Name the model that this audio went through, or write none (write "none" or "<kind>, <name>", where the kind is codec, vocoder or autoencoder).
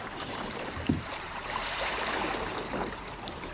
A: vocoder, BigVGAN v2